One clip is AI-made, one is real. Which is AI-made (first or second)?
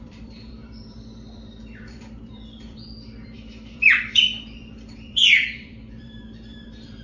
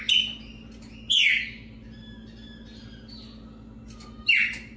first